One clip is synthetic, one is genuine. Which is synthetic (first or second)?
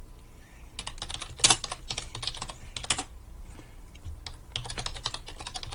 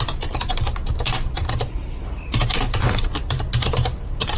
second